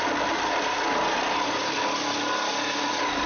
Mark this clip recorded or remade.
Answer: recorded